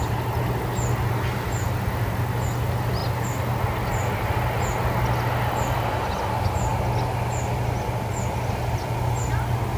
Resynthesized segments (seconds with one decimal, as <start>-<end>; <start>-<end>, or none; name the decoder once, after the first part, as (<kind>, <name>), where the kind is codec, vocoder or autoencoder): none